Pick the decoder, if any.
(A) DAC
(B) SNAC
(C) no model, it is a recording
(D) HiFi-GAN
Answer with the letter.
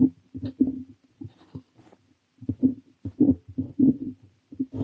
C